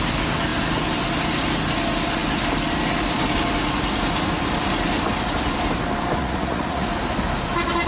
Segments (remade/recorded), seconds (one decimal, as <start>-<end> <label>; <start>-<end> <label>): 0.0-6.2 recorded; 6.2-6.9 remade; 6.9-7.9 recorded